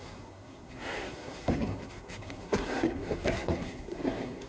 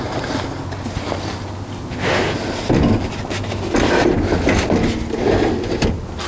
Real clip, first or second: second